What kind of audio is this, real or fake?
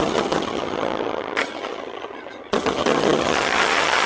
fake